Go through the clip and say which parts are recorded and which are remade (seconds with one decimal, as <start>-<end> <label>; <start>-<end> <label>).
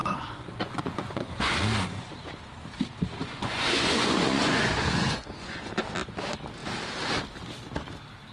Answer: 0.0-2.1 remade; 2.1-3.2 recorded; 3.2-5.7 remade; 5.7-8.3 recorded